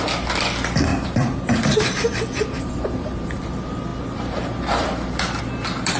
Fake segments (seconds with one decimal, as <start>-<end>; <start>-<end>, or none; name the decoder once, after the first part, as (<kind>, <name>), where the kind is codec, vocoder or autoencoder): 0.9-3.4 (vocoder, BigVGAN v2)